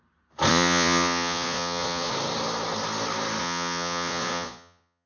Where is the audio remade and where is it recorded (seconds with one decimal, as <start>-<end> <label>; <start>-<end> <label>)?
0.0-0.5 recorded; 0.5-2.1 remade; 2.1-3.4 recorded; 3.4-5.1 remade